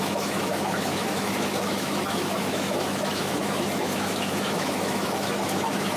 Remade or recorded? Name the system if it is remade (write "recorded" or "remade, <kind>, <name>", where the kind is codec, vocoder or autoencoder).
remade, autoencoder, DAC-VAE